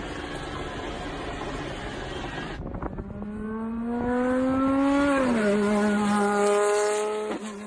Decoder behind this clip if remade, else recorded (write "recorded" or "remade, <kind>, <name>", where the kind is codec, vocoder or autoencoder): recorded